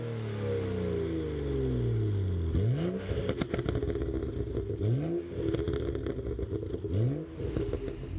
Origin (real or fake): real